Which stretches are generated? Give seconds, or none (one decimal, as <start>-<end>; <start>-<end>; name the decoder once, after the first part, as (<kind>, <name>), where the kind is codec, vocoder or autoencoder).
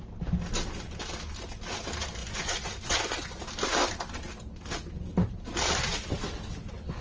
2.2-3.4 (vocoder, Vocos)